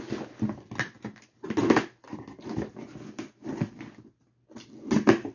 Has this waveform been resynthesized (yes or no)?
no